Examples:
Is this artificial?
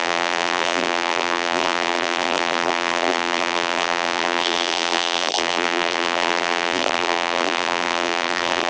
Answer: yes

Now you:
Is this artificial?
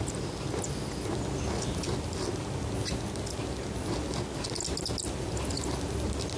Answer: no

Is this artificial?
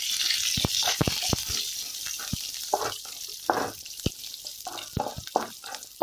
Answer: no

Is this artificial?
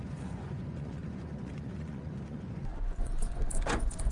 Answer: yes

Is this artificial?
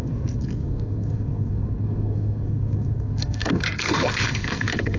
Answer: yes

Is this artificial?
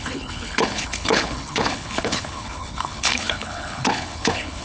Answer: yes